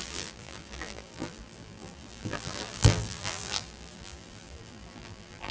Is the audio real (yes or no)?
no